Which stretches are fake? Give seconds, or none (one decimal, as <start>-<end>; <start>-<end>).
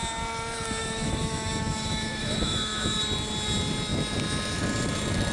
0.8-3.0